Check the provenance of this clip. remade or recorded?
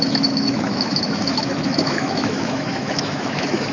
remade